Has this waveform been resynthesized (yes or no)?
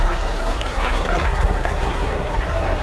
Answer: yes